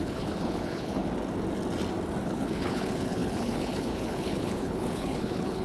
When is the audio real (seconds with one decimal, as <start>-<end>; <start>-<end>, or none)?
1.0-2.2